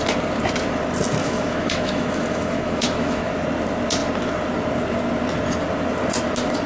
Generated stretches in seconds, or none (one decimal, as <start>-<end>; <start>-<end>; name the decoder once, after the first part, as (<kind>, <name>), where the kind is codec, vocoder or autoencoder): 1.2-3.3 (autoencoder, DAC-VAE)